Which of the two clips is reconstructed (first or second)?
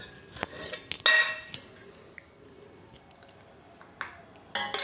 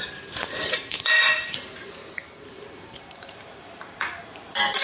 second